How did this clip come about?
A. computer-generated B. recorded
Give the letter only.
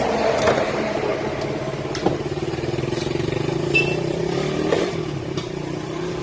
A